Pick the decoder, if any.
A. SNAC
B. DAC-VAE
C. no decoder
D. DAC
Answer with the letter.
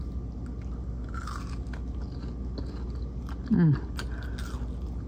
C